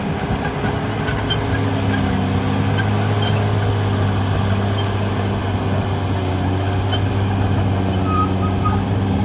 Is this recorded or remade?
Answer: recorded